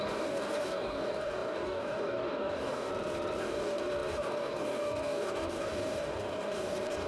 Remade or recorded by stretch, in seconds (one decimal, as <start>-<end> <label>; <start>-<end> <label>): 0.0-2.9 remade; 2.9-3.4 recorded; 3.4-7.1 remade

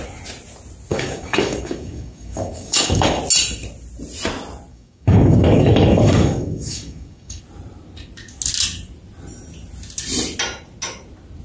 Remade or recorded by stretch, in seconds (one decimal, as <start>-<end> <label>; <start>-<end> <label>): 0.0-0.9 recorded; 0.9-3.2 remade; 3.2-4.7 recorded; 4.7-7.4 remade; 7.4-11.4 recorded

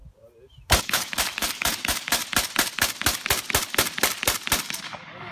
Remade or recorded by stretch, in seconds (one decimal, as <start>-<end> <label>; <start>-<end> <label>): 0.0-0.8 recorded; 0.8-2.2 remade; 2.2-4.6 recorded; 4.6-5.3 remade